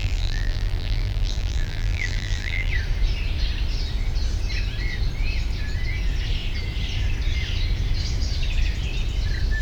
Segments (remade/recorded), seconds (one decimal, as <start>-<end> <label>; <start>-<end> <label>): 0.0-2.7 remade; 2.7-9.6 recorded